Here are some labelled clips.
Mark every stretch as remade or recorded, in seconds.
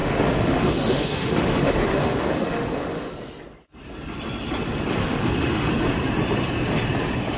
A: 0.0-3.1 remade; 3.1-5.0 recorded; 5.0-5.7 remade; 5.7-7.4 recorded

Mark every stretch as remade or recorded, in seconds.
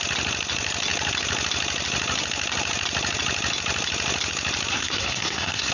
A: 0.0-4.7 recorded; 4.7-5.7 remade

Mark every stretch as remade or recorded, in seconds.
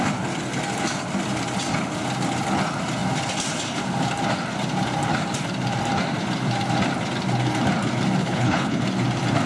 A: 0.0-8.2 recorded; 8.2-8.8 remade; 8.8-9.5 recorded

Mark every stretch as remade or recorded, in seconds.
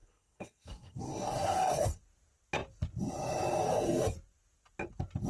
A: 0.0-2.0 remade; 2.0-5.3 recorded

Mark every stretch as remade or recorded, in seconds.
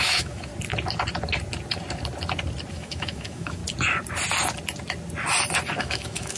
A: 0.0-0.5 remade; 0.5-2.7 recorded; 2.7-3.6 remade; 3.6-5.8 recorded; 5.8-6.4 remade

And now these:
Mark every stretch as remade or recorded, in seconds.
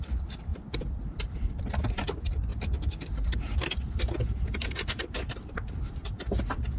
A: 0.0-2.5 recorded; 2.5-6.8 remade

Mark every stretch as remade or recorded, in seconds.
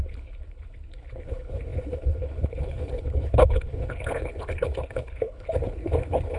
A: 0.0-6.4 remade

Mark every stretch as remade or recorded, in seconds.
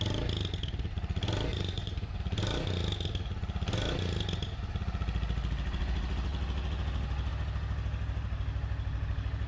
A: 0.0-1.5 recorded; 1.5-2.2 remade; 2.2-9.5 recorded